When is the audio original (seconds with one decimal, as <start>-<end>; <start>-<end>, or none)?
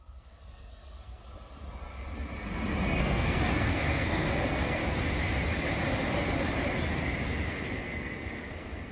1.2-3.0; 4.8-7.5